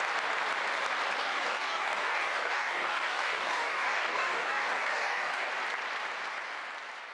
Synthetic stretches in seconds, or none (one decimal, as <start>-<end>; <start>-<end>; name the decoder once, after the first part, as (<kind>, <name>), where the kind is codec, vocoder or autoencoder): 1.2-5.5 (codec, DAC)